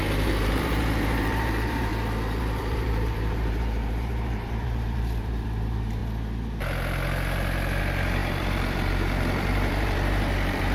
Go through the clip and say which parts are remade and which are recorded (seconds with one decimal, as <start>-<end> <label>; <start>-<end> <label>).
0.0-1.9 remade; 1.9-2.4 recorded; 2.4-6.0 remade; 6.0-7.8 recorded; 7.8-10.7 remade